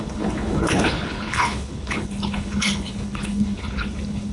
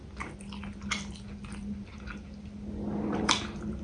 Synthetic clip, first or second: first